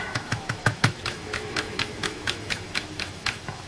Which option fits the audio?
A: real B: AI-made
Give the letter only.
B